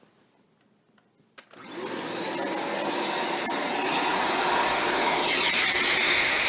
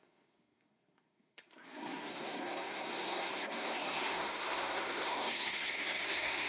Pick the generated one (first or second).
second